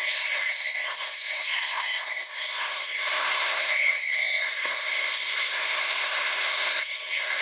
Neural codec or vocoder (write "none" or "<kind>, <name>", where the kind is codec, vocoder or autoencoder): codec, SNAC